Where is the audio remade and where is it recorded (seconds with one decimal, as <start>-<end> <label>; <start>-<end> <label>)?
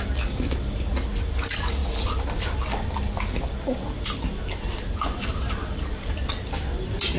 0.0-7.2 recorded